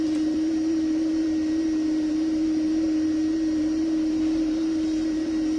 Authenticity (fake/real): fake